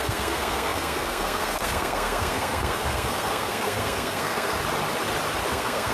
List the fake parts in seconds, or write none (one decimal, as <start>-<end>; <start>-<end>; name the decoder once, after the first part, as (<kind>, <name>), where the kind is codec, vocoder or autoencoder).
0.0-4.6 (codec, SNAC); 5.5-5.9